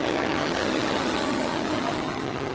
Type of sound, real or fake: fake